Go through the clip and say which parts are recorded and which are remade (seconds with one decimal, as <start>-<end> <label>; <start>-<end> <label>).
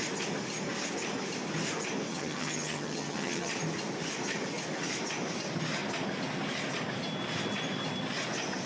0.0-2.1 recorded; 2.1-3.5 remade; 3.5-8.7 recorded